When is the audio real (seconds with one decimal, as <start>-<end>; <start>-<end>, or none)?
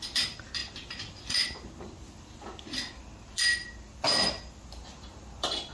0.0-5.7